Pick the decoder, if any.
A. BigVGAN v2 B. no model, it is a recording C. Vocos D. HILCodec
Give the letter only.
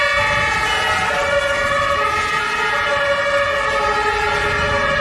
B